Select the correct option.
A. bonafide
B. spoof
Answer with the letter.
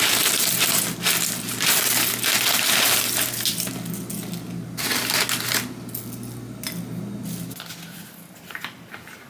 A